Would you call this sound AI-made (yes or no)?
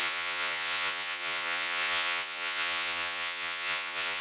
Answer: yes